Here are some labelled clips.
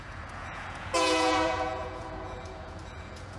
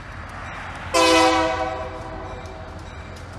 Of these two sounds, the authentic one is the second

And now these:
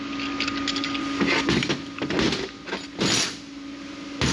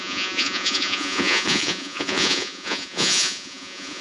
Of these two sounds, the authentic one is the first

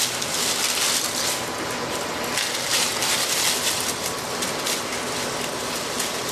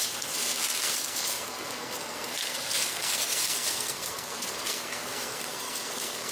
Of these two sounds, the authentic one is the first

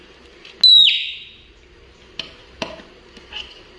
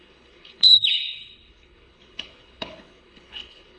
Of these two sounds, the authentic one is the first